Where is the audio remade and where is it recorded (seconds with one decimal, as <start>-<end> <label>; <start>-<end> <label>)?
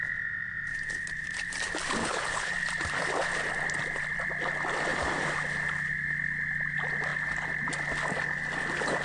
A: 0.0-2.0 recorded; 2.0-2.5 remade; 2.5-9.0 recorded